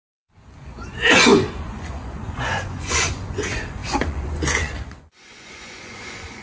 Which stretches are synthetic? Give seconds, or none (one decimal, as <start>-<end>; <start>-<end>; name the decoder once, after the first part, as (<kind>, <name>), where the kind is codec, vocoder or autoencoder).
0.0-6.4 (vocoder, Vocos)